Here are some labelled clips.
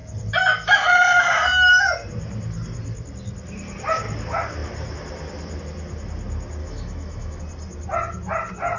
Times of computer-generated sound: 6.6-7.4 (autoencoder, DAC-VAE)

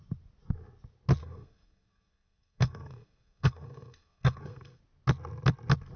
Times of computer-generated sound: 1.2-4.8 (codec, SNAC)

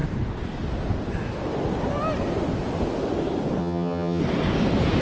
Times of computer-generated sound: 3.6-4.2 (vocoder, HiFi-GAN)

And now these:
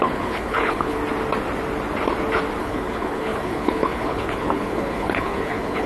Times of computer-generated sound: 0.0-1.0 (codec, HILCodec); 2.6-5.9

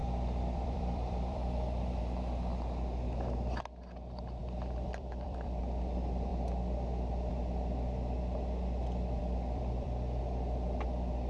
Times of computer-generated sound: 0.0-2.0 (vocoder, BigVGAN v2); 4.4-5.6; 9.2-10.2

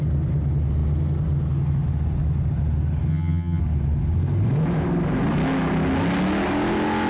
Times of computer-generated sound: 3.1-3.6 (vocoder, HiFi-GAN)

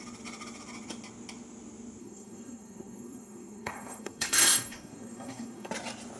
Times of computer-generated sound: 2.0-5.7 (codec, SNAC)